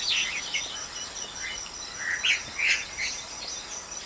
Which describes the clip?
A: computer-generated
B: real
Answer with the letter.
B